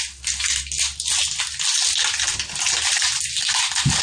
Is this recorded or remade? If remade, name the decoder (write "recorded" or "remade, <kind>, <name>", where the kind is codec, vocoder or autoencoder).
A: recorded